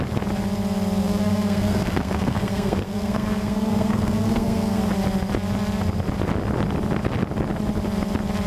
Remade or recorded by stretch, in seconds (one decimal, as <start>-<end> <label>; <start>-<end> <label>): 0.0-1.0 recorded; 1.0-4.9 remade; 4.9-8.5 recorded

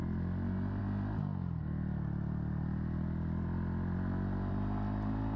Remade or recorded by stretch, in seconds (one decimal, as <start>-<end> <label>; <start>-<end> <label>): 0.0-5.4 recorded

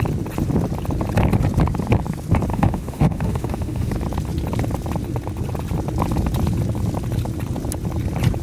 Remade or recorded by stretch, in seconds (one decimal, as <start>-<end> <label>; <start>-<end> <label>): 0.0-2.5 recorded; 2.5-3.9 remade; 3.9-8.4 recorded

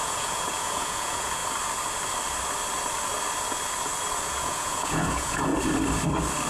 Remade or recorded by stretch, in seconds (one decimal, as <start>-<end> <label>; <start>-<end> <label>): 0.0-1.4 remade; 1.4-4.3 recorded; 4.3-5.5 remade; 5.5-6.5 recorded

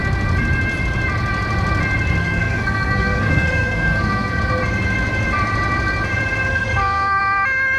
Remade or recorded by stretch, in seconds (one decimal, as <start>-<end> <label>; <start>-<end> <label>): 0.0-2.2 recorded; 2.2-4.4 remade; 4.4-6.5 recorded; 6.5-7.2 remade; 7.2-7.8 recorded

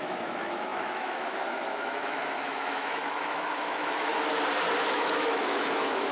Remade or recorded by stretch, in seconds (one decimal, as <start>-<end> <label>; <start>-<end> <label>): 0.0-4.1 remade; 4.1-4.8 recorded; 4.8-6.1 remade

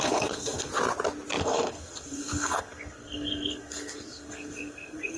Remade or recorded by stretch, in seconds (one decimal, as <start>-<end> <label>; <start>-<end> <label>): 0.0-0.7 remade; 0.7-1.4 recorded; 1.4-5.2 remade